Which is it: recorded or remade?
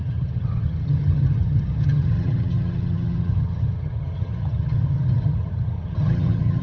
remade